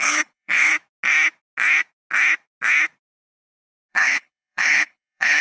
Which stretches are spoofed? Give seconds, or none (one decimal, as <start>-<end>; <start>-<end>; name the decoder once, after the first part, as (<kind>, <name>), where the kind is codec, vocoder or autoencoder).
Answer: 0.0-0.7 (codec, HILCodec); 3.9-5.4